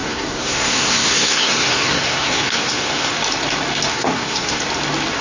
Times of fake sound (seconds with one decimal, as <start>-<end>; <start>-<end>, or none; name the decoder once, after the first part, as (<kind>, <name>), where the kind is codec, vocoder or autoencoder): 0.0-3.1 (codec, SNAC); 3.9-4.6